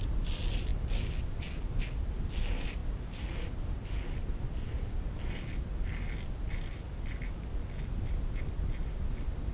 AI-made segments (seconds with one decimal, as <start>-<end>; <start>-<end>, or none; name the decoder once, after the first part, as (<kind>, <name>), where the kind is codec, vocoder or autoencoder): none